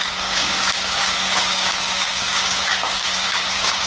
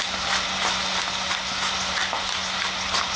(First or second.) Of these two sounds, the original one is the second